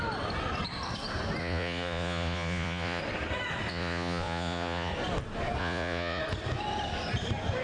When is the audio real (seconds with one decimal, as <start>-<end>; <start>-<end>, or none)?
0.0-1.4; 3.0-3.7; 4.9-5.6; 6.2-7.6